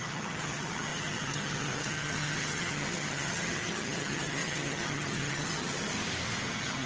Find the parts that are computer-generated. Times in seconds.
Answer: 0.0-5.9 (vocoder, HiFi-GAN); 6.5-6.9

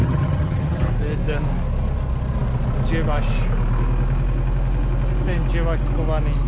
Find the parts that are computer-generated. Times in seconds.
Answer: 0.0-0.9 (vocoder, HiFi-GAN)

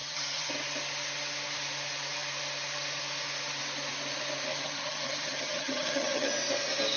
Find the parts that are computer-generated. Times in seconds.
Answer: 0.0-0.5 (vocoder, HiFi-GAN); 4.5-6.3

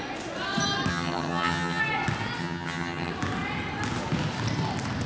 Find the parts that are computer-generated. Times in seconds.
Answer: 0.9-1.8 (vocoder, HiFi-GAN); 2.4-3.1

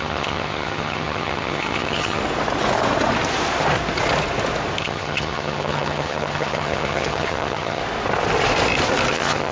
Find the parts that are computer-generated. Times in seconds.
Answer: 0.0-2.2 (vocoder, HiFi-GAN); 4.8-7.8; 9.1-9.5